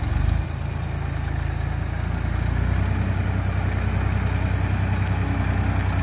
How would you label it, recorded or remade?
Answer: recorded